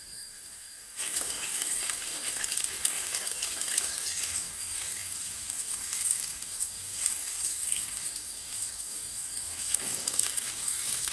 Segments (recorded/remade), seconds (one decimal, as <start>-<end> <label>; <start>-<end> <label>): 0.0-11.1 remade